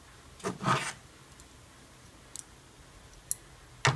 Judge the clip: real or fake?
real